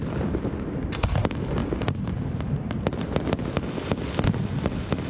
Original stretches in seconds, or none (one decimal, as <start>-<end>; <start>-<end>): 0.0-5.1